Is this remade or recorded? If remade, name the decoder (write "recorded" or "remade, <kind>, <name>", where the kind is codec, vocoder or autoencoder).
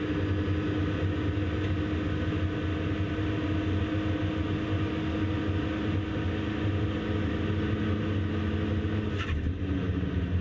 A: recorded